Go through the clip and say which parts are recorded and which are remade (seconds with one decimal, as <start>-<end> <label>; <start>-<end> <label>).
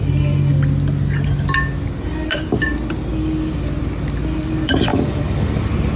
0.0-4.9 recorded; 4.9-5.6 remade; 5.6-6.0 recorded